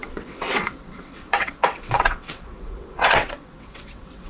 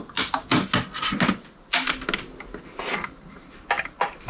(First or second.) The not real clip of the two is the first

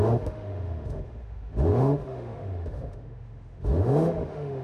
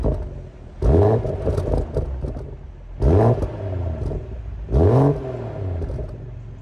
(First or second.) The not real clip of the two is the first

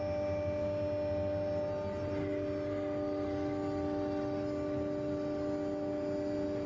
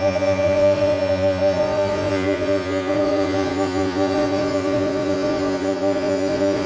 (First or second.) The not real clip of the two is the second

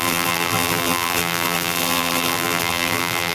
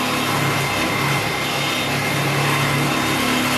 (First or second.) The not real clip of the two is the first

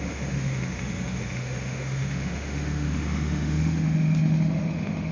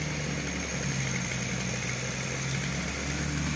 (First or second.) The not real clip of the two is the first